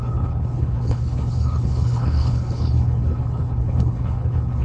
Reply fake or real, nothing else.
fake